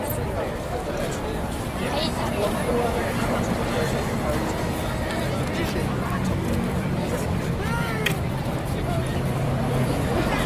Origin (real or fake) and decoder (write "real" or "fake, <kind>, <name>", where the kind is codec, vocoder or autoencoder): fake, vocoder, BigVGAN v2